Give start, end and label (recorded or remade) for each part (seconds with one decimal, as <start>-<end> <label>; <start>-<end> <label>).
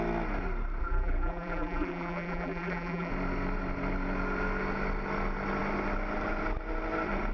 0.0-0.8 recorded; 0.8-3.1 remade; 3.1-7.3 recorded